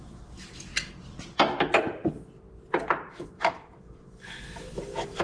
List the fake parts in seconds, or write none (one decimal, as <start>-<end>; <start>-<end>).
0.0-0.7; 3.1-5.2